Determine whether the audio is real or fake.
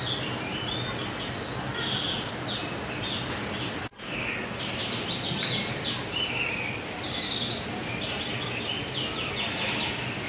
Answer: real